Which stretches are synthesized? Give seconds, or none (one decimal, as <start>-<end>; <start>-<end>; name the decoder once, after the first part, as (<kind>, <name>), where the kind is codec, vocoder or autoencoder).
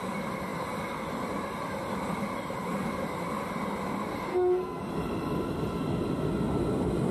4.3-4.9 (codec, SNAC)